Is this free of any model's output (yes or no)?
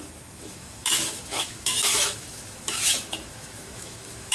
no